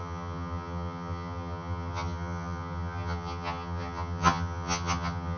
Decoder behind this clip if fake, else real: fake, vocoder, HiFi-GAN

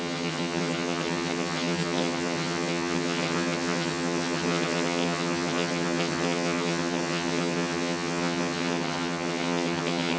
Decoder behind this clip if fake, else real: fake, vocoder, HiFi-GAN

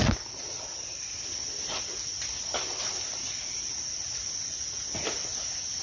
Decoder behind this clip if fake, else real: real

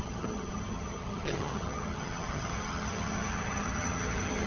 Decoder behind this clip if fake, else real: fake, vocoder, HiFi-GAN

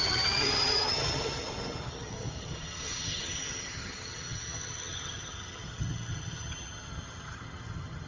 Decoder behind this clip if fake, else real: fake, vocoder, HiFi-GAN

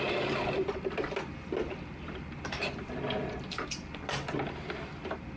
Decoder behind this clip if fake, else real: real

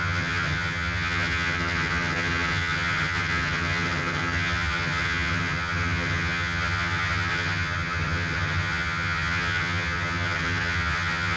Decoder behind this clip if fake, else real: fake, vocoder, HiFi-GAN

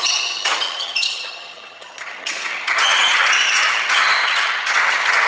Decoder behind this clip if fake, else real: fake, vocoder, HiFi-GAN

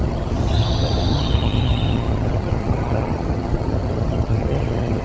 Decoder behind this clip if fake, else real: fake, vocoder, HiFi-GAN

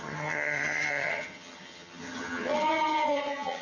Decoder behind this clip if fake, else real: fake, vocoder, HiFi-GAN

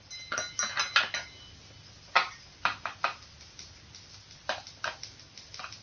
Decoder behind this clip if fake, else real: real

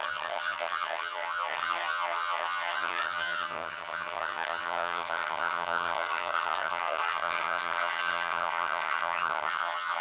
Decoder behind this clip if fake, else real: fake, vocoder, HiFi-GAN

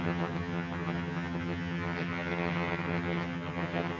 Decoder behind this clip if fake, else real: fake, vocoder, HiFi-GAN